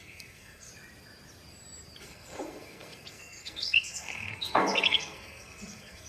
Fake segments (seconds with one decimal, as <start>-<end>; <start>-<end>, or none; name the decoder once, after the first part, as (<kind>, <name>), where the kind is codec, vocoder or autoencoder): 0.0-0.7 (codec, SNAC); 2.0-6.1

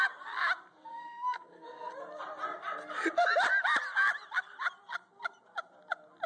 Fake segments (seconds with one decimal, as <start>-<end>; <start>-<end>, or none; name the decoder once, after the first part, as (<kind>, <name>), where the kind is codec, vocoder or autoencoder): 0.9-1.9 (codec, SNAC)

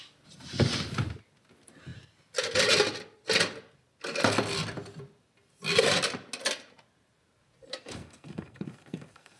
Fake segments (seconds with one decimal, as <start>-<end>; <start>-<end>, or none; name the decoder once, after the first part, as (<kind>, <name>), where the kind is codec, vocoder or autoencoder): 7.6-9.4 (codec, SNAC)

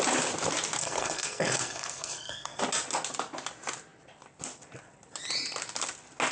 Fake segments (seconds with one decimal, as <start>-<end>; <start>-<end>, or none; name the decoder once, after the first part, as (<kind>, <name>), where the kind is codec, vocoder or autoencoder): 0.8-2.6 (codec, SNAC)